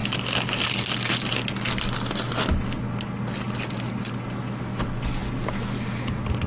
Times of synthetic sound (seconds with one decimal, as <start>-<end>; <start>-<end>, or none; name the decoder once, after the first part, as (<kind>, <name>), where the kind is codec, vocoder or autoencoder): none